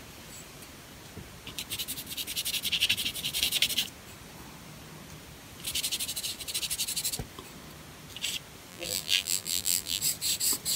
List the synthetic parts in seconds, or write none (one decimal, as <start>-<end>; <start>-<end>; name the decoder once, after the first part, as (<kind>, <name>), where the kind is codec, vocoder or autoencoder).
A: 8.7-10.0 (vocoder, BigVGAN v2)